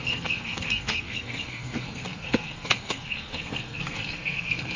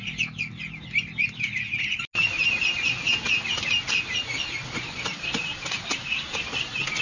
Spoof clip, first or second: first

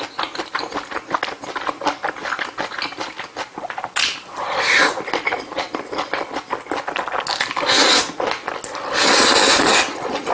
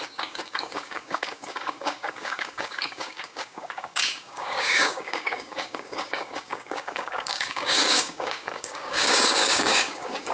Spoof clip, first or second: second